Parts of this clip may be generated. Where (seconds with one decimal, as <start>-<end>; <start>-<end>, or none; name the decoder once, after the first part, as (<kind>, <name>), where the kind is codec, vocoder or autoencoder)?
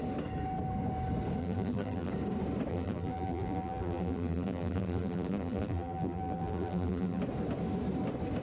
1.4-2.1 (vocoder, BigVGAN v2); 2.7-7.2